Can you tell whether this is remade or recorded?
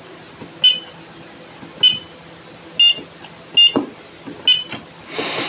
recorded